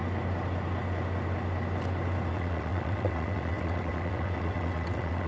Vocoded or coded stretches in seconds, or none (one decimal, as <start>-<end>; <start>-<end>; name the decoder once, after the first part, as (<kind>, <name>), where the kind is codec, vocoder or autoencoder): 2.3-5.3 (vocoder, WaveNeXt)